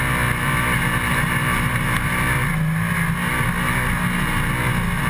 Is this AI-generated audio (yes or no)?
no